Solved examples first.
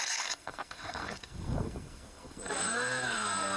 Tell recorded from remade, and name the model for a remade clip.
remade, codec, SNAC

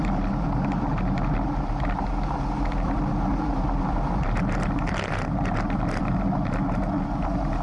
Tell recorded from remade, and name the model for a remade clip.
recorded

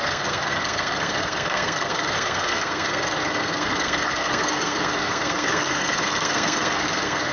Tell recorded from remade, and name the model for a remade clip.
remade, codec, SNAC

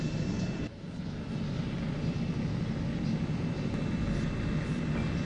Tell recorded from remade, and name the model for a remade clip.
recorded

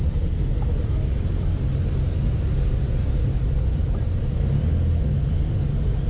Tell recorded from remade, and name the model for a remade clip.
recorded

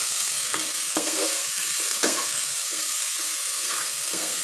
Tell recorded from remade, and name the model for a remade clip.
remade, codec, SNAC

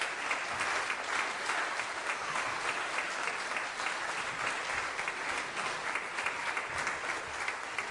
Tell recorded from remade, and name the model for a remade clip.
recorded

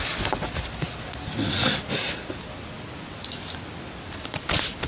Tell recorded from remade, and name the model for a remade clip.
recorded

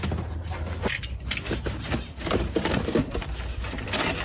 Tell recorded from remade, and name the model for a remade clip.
recorded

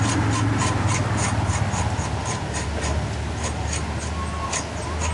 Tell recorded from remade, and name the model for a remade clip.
recorded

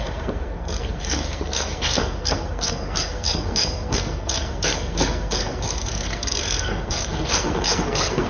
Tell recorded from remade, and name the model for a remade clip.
remade, codec, SNAC